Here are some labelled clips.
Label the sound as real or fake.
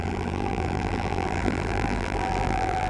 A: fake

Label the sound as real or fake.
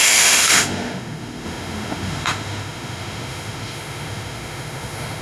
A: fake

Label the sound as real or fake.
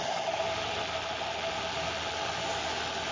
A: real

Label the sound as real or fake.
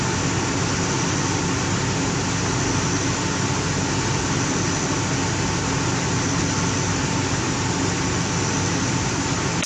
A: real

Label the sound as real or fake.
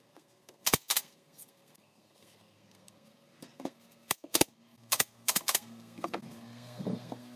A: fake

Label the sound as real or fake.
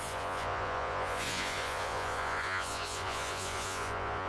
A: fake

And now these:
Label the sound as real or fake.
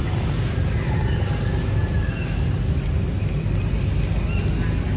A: real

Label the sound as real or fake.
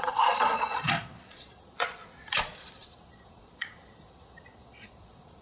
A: fake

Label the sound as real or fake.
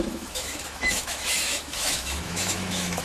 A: fake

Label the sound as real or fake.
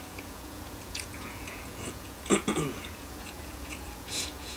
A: fake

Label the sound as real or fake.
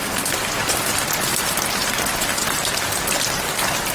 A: real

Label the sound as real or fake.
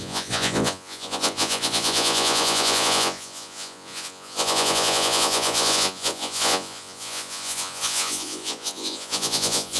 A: fake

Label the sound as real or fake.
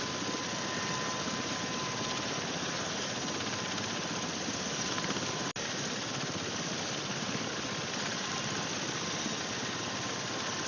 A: real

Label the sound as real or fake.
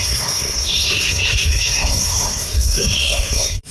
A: fake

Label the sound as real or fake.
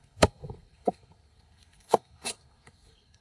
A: fake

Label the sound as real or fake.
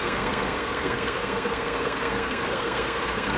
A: fake